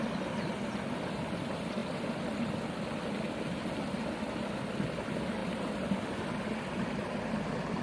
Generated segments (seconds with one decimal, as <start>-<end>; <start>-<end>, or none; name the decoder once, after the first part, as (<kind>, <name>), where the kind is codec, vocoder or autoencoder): 5.4-5.9 (vocoder, BigVGAN v2)